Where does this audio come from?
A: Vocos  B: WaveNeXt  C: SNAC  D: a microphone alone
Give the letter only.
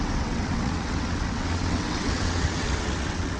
B